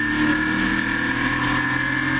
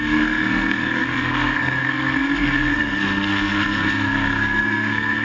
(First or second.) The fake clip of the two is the second